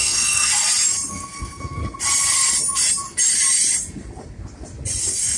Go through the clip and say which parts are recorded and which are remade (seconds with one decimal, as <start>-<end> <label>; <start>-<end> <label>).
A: 0.0-0.5 remade; 0.5-1.1 recorded; 1.1-1.8 remade; 1.8-5.0 recorded; 5.0-5.4 remade